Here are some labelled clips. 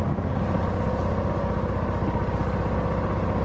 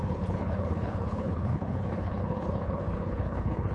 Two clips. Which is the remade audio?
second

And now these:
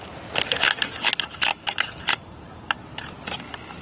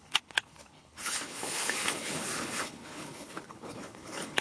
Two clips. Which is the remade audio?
second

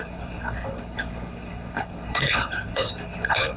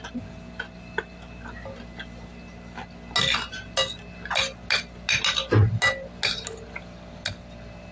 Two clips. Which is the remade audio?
first